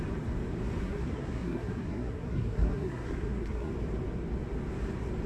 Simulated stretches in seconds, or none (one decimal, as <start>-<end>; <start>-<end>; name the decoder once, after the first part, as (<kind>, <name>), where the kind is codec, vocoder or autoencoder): 0.8-3.7 (codec, SNAC)

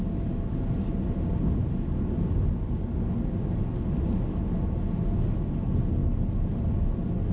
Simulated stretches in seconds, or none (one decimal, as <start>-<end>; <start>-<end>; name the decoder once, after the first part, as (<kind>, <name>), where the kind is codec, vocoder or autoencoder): none

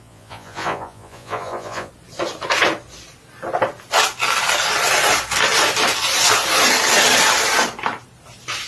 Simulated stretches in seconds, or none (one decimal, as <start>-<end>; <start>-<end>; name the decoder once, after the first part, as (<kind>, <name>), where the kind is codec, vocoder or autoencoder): 0.0-1.9 (vocoder, Vocos)

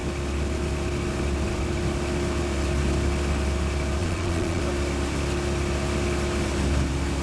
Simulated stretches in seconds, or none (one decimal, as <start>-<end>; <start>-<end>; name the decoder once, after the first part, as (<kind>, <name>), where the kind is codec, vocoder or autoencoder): 4.0-4.6 (vocoder, Vocos)